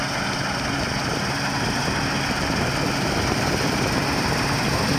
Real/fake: real